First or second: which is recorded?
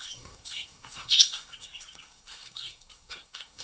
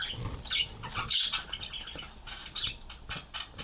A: second